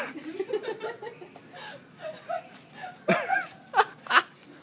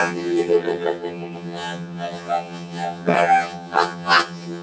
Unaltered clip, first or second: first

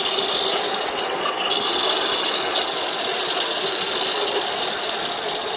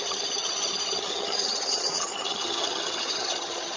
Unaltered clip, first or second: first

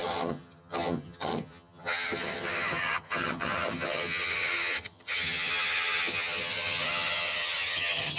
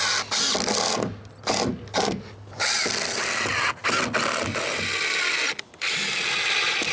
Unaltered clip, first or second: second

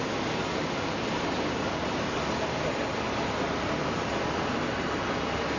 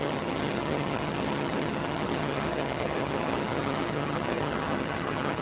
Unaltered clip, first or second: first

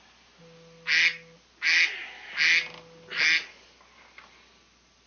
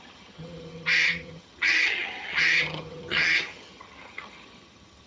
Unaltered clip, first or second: first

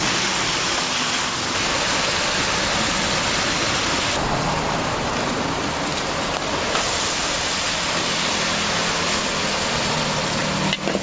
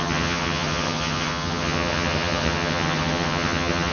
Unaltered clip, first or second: first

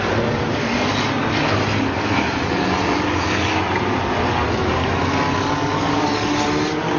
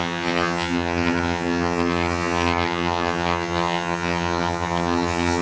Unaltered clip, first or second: first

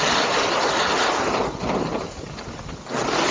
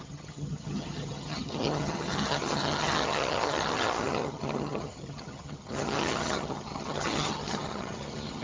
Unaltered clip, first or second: first